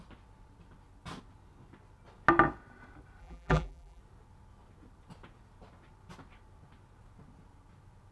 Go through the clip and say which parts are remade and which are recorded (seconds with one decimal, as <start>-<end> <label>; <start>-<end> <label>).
0.0-3.2 recorded; 3.2-4.0 remade; 4.0-8.1 recorded